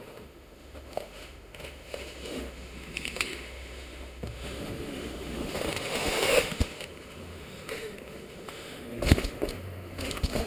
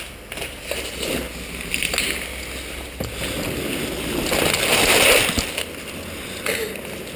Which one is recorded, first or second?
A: second